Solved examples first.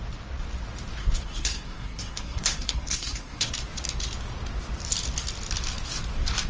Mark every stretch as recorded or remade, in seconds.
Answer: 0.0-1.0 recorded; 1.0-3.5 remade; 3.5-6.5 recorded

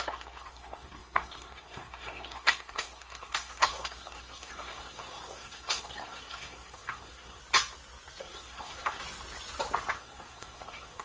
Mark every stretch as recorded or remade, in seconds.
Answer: 0.0-7.4 remade; 7.4-8.2 recorded; 8.2-9.0 remade; 9.0-9.9 recorded; 9.9-11.0 remade